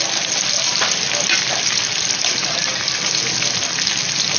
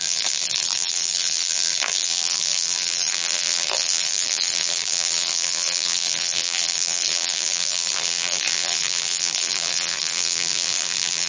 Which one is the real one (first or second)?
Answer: first